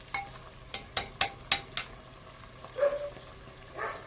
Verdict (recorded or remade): recorded